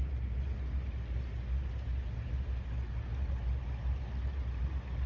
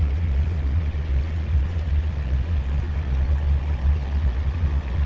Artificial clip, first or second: second